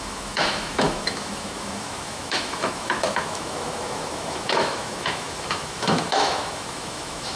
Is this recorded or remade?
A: remade